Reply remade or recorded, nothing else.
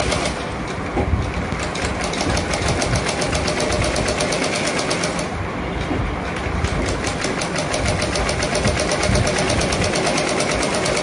recorded